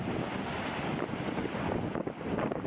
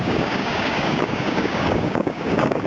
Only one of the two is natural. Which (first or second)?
first